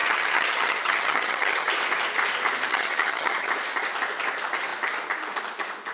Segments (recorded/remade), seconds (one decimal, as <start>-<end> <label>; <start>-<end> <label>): 0.0-1.7 remade; 1.7-2.7 recorded; 2.7-3.5 remade; 3.5-5.9 recorded

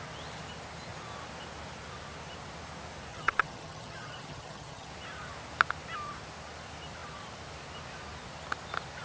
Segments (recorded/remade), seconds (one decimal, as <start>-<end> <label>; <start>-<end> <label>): 0.0-3.1 recorded; 3.1-4.9 remade; 4.9-9.0 recorded

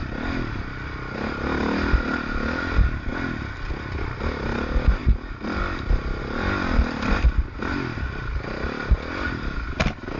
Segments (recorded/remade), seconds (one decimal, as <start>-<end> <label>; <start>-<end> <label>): 0.0-10.2 recorded

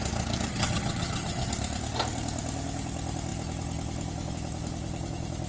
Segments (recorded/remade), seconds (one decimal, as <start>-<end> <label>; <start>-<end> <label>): 0.0-0.5 recorded; 0.5-1.5 remade; 1.5-5.5 recorded

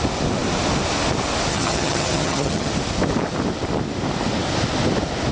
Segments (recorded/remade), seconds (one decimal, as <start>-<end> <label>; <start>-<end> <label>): 0.0-1.5 recorded; 1.5-2.7 remade; 2.7-5.3 recorded

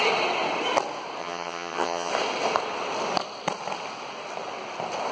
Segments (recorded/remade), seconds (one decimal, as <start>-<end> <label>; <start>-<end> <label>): 0.0-1.2 recorded; 1.2-2.1 remade; 2.1-5.1 recorded

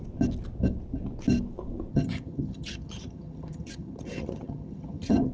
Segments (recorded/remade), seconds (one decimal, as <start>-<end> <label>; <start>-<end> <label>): 0.0-1.9 recorded; 1.9-5.3 remade